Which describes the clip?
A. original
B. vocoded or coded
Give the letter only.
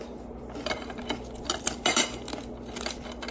A